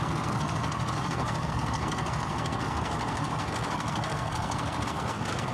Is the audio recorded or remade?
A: remade